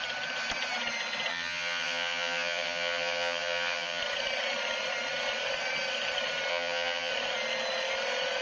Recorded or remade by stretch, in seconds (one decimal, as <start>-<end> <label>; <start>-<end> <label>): 0.0-1.3 recorded; 1.3-4.0 remade; 4.0-6.5 recorded; 6.5-7.1 remade; 7.1-8.4 recorded